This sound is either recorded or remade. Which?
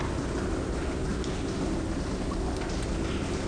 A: recorded